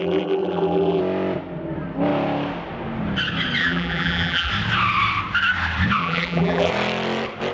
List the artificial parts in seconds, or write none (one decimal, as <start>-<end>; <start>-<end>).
0.0-1.0; 3.6-4.5; 6.0-6.7